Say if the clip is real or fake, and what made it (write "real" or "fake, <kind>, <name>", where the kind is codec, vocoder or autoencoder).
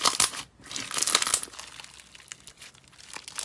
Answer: real